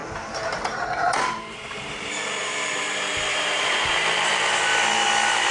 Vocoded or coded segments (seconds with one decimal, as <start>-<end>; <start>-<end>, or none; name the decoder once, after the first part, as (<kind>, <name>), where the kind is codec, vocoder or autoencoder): 0.0-4.7 (vocoder, BigVGAN v2)